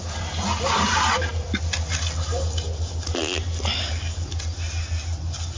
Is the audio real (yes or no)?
yes